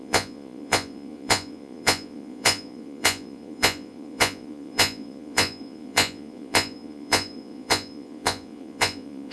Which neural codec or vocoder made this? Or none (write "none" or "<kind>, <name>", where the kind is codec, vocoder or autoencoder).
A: vocoder, Vocos